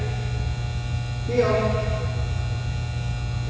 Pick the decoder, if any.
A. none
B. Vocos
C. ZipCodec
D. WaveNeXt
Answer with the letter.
A